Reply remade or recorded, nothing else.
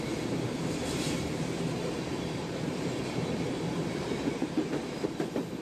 remade